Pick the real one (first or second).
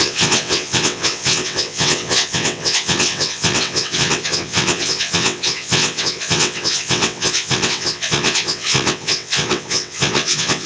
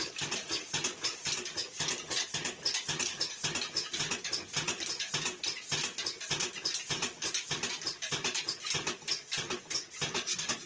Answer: second